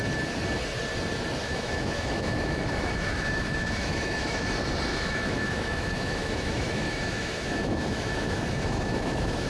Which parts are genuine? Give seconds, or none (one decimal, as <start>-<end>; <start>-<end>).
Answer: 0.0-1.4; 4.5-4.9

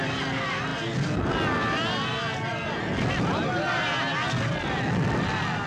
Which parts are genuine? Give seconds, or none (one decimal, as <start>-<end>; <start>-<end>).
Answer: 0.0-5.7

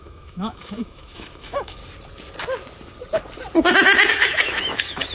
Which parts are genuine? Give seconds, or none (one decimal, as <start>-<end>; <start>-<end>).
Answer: 1.8-4.1